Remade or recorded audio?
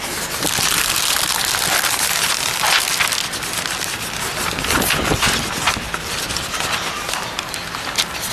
recorded